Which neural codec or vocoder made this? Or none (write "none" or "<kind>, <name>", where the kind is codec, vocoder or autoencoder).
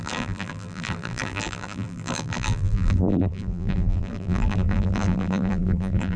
vocoder, BigVGAN v2